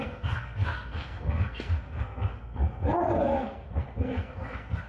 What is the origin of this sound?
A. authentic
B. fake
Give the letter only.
B